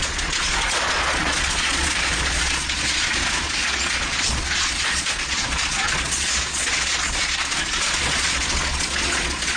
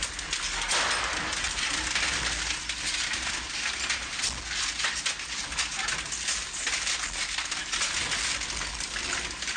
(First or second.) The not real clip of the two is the first